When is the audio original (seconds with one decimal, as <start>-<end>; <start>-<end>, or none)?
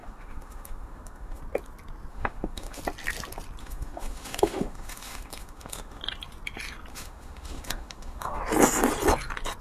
1.4-2.1; 2.8-3.6; 6.0-6.9; 8.4-9.6